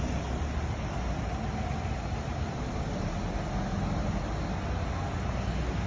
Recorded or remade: recorded